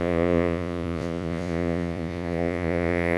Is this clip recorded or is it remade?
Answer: remade